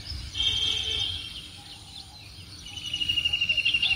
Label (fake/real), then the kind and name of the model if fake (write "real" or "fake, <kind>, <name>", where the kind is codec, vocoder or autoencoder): real